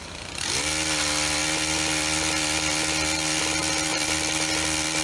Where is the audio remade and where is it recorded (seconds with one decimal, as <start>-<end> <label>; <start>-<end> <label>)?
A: 0.0-1.4 remade; 1.4-3.4 recorded; 3.4-5.0 remade